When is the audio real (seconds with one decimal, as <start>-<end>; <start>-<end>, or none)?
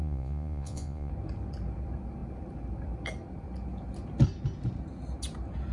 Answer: 1.1-5.7